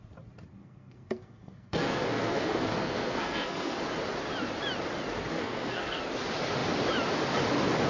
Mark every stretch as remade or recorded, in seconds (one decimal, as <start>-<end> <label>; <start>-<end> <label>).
0.0-0.6 recorded; 0.6-3.8 remade; 3.8-5.3 recorded; 5.3-6.0 remade; 6.0-7.9 recorded